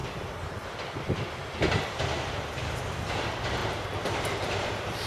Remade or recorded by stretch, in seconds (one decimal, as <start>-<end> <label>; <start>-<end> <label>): 0.0-3.1 recorded; 3.1-5.1 remade